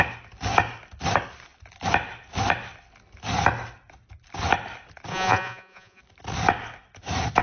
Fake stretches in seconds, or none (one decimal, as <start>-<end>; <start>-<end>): 5.1-6.0